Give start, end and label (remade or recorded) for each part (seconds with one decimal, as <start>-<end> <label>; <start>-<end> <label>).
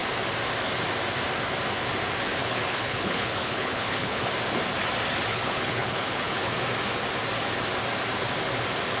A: 0.0-2.4 recorded; 2.4-4.3 remade; 4.3-5.3 recorded; 5.3-6.5 remade; 6.5-9.0 recorded